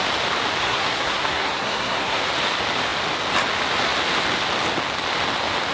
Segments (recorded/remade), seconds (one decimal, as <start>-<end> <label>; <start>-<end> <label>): 0.0-0.6 recorded; 0.6-2.2 remade; 2.2-5.7 recorded